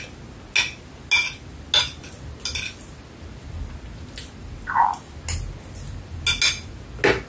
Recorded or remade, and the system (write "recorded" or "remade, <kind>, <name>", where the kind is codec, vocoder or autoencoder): recorded